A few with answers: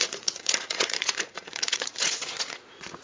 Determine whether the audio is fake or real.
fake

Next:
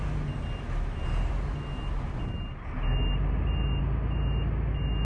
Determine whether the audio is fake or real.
real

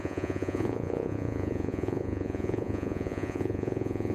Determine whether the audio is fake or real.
fake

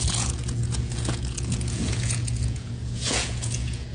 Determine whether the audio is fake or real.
fake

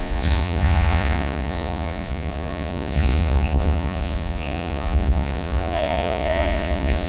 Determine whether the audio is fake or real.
fake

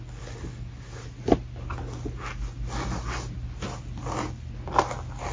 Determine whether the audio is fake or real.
real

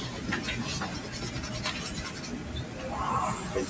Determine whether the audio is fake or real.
real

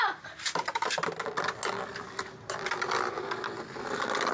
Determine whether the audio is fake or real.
real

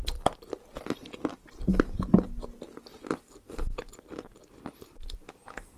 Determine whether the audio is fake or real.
real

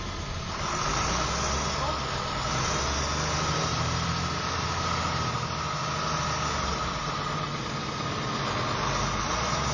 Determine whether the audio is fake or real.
real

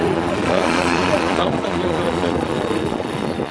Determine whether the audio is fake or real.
fake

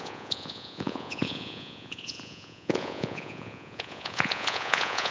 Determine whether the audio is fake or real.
fake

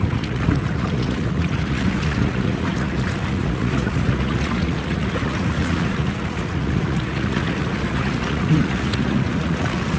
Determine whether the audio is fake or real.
fake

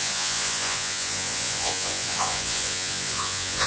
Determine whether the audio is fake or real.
fake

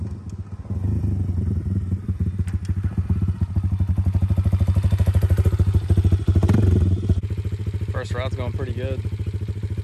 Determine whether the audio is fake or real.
real